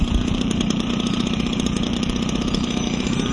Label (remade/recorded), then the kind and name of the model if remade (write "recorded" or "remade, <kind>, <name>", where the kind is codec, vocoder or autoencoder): remade, vocoder, BigVGAN v2